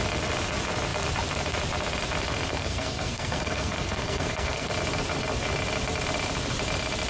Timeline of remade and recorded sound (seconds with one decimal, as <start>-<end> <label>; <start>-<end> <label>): 0.0-2.5 recorded; 2.5-4.7 remade; 4.7-7.1 recorded